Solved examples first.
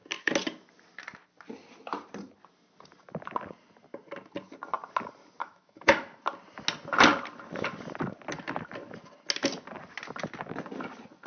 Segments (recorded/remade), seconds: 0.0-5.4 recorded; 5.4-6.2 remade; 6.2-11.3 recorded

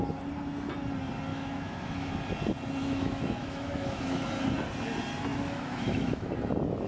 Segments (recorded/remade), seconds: 0.0-1.3 recorded; 1.3-2.1 remade; 2.1-2.8 recorded; 2.8-4.3 remade; 4.3-5.3 recorded; 5.3-6.3 remade; 6.3-6.9 recorded